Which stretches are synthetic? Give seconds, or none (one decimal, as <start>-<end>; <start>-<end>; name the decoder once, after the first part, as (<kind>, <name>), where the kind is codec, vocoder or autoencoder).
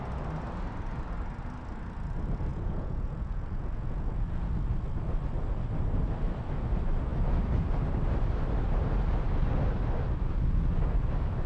2.5-4.5 (vocoder, Vocos)